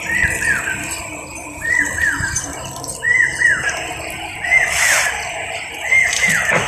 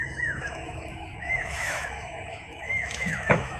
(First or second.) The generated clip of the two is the second